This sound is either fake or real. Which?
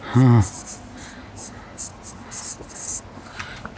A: real